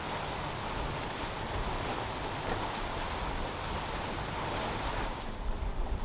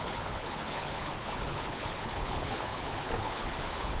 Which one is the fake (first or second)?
second